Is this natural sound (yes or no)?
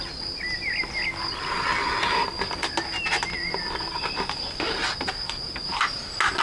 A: yes